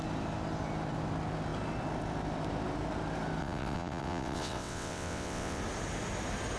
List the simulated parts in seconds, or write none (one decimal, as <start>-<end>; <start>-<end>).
3.4-5.6

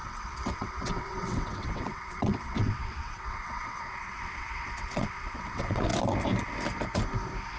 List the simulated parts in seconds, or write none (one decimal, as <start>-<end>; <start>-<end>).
0.0-5.9